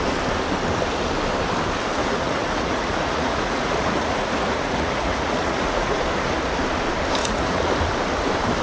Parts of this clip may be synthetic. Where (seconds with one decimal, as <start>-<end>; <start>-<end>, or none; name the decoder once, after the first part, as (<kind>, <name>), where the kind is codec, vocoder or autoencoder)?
2.0-6.0 (vocoder, Vocos); 7.2-7.7